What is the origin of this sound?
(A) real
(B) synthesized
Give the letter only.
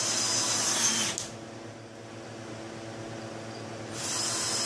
A